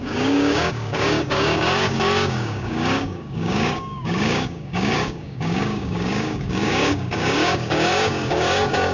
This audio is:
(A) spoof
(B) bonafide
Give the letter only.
A